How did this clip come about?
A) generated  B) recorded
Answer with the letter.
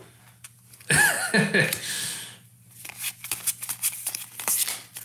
B